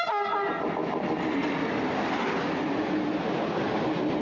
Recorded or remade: recorded